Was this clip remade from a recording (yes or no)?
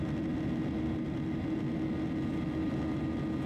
no